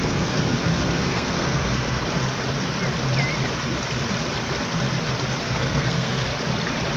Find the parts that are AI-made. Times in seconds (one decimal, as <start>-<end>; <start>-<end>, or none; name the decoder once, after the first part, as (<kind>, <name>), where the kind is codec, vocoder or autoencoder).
0.0-2.0 (codec, SNAC); 5.4-6.3